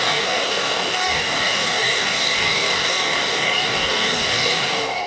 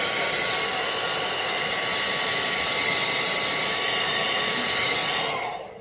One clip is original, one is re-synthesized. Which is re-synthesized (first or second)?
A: first